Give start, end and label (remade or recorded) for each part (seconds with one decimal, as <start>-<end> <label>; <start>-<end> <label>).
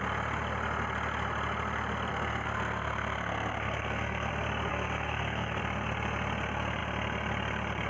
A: 0.0-2.1 recorded; 2.1-4.3 remade; 4.3-4.7 recorded; 4.7-5.6 remade; 5.6-7.9 recorded